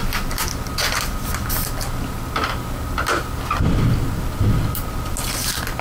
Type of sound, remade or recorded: recorded